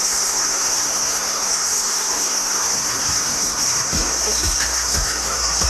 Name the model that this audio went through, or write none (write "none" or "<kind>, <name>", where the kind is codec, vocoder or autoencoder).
codec, SNAC